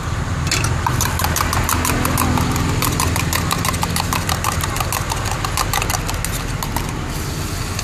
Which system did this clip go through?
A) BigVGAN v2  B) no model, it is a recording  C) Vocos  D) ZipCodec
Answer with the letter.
B